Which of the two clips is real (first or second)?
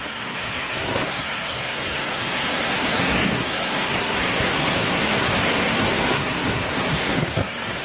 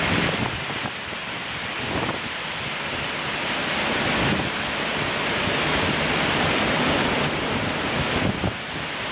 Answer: second